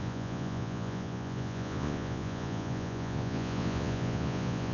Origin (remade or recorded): remade